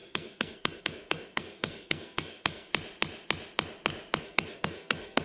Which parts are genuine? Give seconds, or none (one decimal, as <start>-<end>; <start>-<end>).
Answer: 2.7-4.2